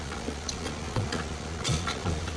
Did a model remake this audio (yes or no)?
yes